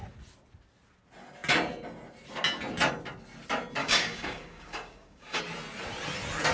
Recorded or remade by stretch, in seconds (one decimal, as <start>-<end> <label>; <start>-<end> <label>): 0.0-3.8 recorded; 3.8-5.4 remade; 5.4-6.5 recorded